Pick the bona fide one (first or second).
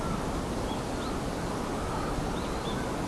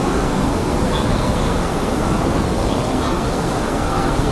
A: first